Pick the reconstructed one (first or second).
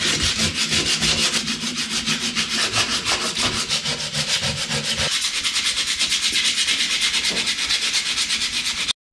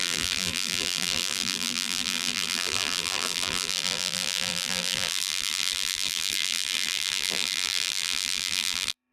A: second